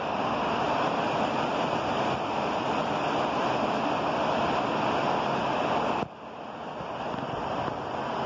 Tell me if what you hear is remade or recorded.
recorded